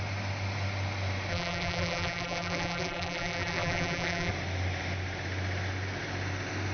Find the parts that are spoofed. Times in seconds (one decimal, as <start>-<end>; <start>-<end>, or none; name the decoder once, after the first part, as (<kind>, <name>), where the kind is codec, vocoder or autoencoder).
1.3-4.3 (vocoder, BigVGAN v2)